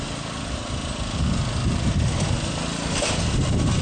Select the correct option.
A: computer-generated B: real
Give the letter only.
B